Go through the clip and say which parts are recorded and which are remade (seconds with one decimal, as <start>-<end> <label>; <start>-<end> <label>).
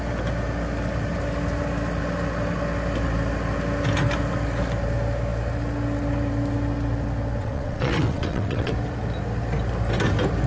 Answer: 0.0-7.4 recorded; 7.4-8.7 remade; 8.7-10.5 recorded